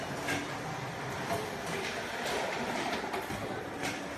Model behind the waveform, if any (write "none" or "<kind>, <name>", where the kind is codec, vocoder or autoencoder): vocoder, BigVGAN v2